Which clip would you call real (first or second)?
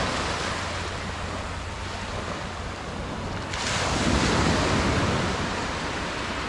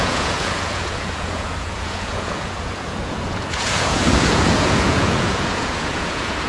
first